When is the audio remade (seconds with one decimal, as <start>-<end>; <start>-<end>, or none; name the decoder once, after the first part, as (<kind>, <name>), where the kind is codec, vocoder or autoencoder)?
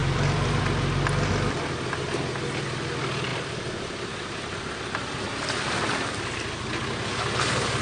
0.0-0.6 (vocoder, BigVGAN v2); 3.3-4.7